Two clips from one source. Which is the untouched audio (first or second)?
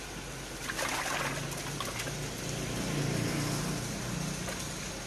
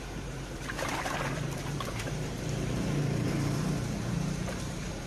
first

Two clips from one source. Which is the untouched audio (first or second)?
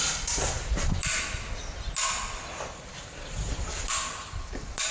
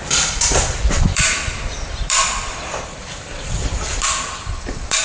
first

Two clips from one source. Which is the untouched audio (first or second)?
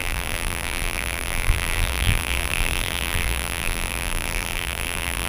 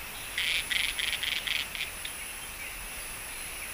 second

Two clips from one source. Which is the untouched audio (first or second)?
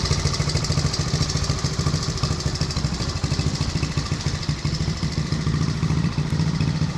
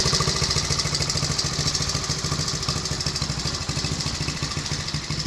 second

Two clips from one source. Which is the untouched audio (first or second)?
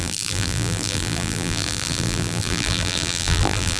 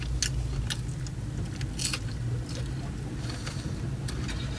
second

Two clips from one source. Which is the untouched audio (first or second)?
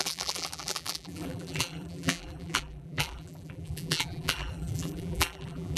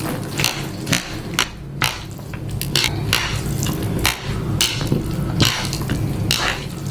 second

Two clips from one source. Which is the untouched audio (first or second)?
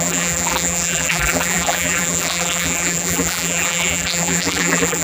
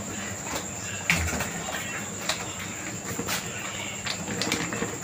second